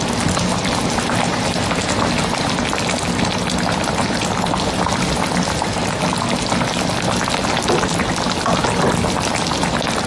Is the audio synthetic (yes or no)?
no